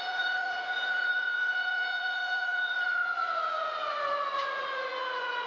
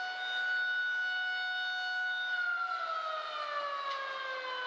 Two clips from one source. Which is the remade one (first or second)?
first